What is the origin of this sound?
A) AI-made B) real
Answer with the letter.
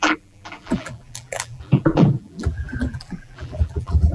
A